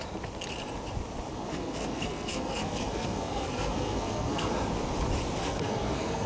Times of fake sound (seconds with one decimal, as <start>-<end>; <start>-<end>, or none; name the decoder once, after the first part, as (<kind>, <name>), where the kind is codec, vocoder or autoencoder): 1.3-4.5 (codec, SNAC); 5.4-6.3